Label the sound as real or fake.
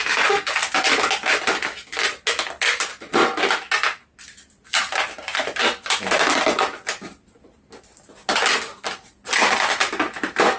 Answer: real